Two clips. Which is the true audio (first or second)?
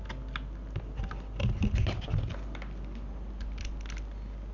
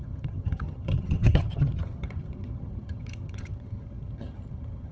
first